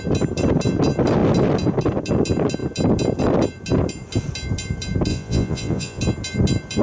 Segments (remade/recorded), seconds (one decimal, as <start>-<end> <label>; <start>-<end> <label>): 0.0-5.1 recorded; 5.1-6.0 remade; 6.0-6.8 recorded